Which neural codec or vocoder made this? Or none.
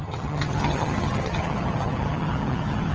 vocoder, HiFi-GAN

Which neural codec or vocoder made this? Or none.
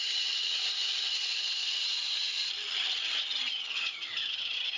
vocoder, HiFi-GAN